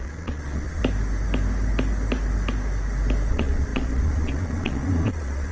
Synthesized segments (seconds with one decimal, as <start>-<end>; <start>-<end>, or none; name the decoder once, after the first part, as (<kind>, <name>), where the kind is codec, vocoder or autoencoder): 0.0-0.8 (vocoder, Vocos); 3.3-5.5